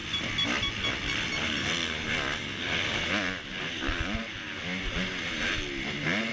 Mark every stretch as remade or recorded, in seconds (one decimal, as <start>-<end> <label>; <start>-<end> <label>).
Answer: 0.0-6.3 recorded